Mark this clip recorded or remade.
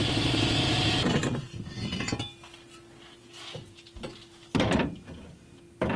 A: recorded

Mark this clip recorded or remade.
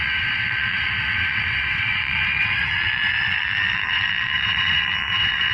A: remade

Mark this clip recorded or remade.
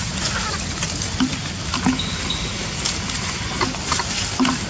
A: recorded